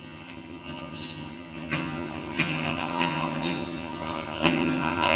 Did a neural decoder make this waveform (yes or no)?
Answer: yes